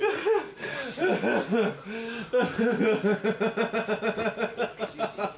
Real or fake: real